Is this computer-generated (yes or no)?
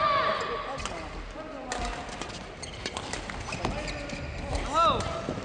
no